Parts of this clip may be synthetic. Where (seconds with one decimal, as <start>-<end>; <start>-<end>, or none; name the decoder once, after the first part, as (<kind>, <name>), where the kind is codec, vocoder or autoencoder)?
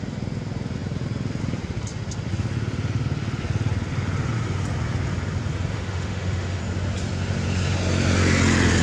5.7-6.6 (autoencoder, DAC-VAE)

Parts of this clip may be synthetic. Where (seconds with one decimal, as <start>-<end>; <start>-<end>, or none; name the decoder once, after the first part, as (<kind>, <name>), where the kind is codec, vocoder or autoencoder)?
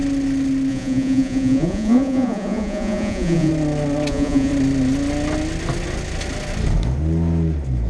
0.7-3.5 (vocoder, Vocos); 4.1-4.5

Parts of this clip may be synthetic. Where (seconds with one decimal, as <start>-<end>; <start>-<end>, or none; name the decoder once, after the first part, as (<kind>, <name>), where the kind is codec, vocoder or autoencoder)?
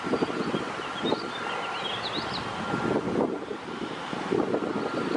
none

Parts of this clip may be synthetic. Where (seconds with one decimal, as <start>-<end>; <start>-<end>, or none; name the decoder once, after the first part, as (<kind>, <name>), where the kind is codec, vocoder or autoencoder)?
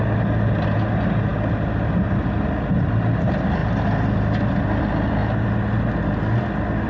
none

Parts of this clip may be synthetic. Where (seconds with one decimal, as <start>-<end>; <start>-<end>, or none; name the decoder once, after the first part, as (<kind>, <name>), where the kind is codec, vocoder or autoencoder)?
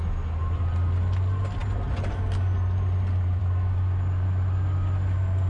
none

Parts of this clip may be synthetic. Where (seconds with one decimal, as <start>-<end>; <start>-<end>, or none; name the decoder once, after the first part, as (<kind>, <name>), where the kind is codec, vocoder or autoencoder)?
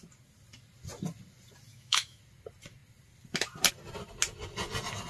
1.7-2.2 (autoencoder, DAC-VAE)